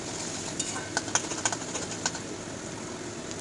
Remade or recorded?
recorded